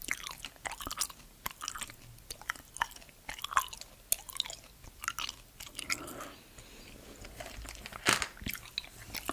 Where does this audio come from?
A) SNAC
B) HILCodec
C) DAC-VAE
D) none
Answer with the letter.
D